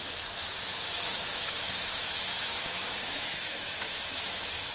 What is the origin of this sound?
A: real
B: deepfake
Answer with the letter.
B